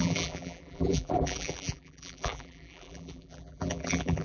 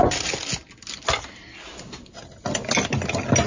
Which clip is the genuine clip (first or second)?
second